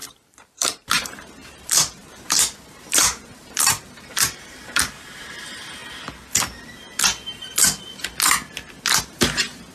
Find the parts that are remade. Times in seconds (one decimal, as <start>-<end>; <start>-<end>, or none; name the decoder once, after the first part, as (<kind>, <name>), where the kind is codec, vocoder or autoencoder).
0.0-5.8 (vocoder, BigVGAN v2); 9.0-9.7